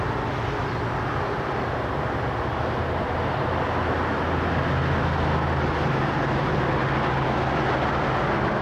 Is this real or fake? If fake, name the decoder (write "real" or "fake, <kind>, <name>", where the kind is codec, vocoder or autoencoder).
real